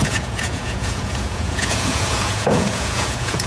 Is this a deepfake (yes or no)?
yes